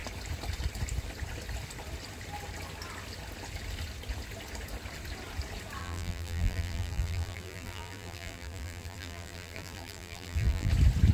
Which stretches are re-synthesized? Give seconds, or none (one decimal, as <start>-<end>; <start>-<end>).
5.8-10.7

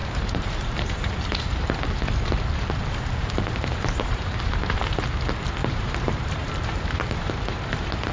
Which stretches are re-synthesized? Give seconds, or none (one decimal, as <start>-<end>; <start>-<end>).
0.0-1.9; 2.9-4.6; 5.6-7.1

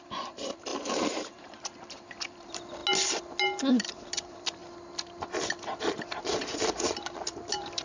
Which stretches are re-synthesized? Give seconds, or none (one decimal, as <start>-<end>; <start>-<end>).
0.0-2.8; 3.7-4.6; 6.2-7.8

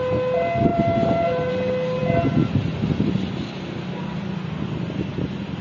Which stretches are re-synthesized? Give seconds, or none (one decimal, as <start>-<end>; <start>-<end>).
0.7-1.5

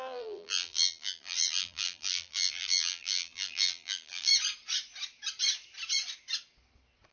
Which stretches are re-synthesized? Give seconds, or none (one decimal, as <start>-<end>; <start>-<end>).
0.0-4.3

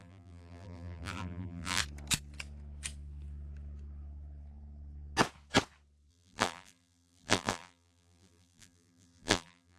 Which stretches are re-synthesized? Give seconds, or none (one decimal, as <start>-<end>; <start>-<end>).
0.0-1.8; 6.1-9.8